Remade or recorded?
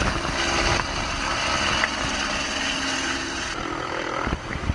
recorded